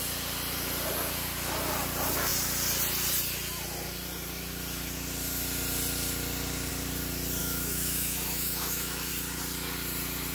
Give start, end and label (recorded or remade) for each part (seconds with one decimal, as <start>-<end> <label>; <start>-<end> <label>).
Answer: 0.0-7.4 recorded; 7.4-9.1 remade; 9.1-10.3 recorded